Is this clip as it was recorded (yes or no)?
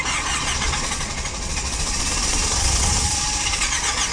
no